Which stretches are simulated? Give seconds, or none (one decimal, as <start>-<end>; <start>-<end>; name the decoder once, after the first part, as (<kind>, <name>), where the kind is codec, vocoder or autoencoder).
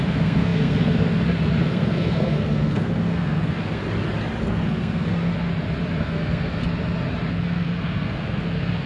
0.0-3.8 (codec, SNAC); 4.4-5.3; 6.0-6.6; 7.3-8.9